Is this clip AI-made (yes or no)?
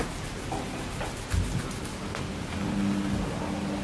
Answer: no